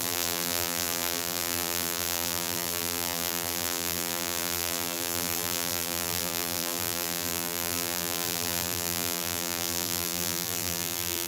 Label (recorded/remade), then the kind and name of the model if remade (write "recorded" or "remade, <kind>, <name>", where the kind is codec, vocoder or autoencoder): remade, vocoder, BigVGAN v2